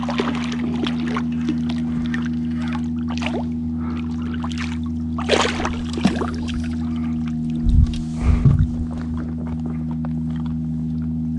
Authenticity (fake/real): real